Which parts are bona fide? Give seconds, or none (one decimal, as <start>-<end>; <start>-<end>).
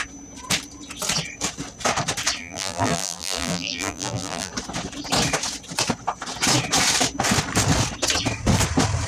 0.0-2.4; 4.5-9.1